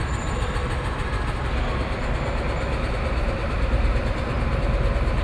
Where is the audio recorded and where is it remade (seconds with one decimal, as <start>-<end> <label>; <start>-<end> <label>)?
0.0-0.6 remade; 0.6-2.9 recorded; 2.9-5.2 remade